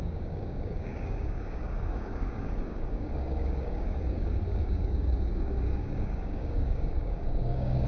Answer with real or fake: fake